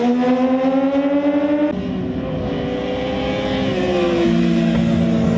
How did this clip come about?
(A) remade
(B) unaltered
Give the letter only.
B